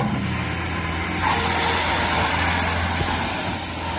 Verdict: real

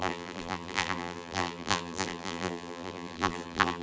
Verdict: fake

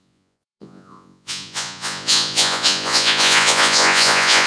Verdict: fake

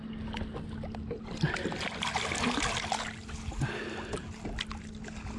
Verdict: real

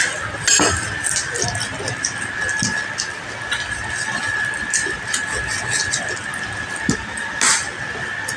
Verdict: real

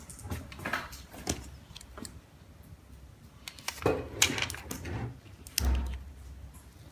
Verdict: real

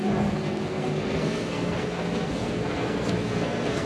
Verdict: fake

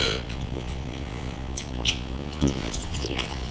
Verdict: fake